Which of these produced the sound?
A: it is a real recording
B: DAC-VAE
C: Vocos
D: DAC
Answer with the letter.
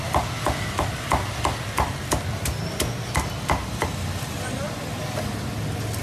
A